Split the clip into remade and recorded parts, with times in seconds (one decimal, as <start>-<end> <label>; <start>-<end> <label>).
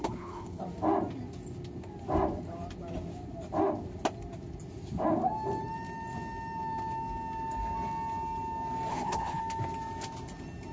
0.0-0.6 remade; 0.6-8.9 recorded; 8.9-9.4 remade; 9.4-10.7 recorded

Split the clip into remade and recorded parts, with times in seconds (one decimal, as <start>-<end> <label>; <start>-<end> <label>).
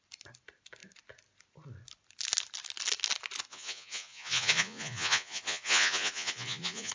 0.0-3.5 recorded; 3.5-6.9 remade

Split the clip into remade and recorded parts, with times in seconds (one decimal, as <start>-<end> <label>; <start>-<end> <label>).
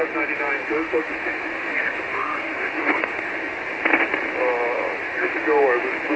0.0-0.7 recorded; 0.7-3.3 remade; 3.3-6.2 recorded